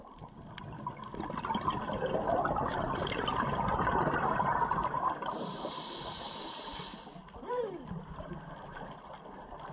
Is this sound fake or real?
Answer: real